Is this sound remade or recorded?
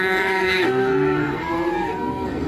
remade